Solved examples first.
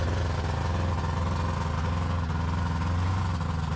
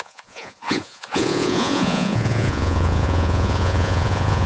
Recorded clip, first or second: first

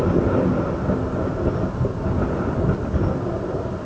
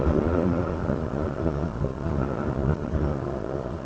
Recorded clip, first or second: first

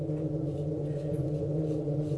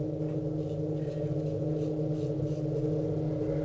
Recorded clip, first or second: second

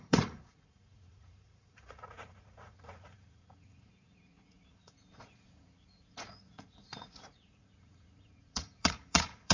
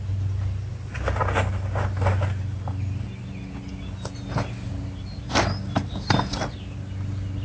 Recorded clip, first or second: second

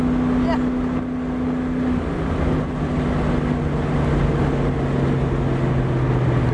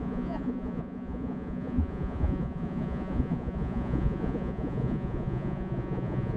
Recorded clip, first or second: first